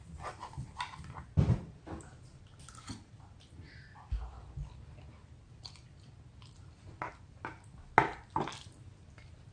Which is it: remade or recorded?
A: recorded